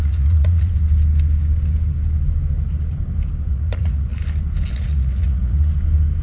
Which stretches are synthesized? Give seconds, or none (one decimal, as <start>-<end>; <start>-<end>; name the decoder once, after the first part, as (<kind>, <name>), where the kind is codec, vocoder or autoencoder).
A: 0.0-0.7 (vocoder, Vocos); 3.5-4.2; 4.7-5.7